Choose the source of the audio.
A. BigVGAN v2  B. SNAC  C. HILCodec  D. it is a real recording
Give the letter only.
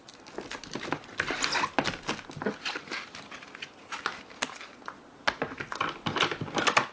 D